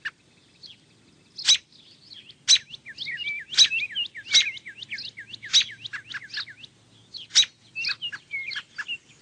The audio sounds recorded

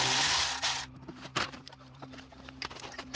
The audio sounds remade